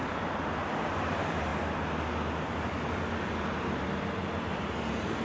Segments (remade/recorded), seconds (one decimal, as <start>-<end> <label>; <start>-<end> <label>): 0.0-1.5 remade; 1.5-3.6 recorded; 3.6-5.2 remade